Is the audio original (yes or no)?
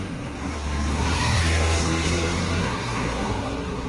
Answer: no